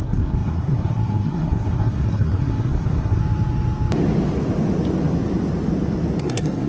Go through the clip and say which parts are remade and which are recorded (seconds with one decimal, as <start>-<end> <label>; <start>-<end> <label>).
0.0-3.2 remade; 3.2-6.2 recorded; 6.2-6.7 remade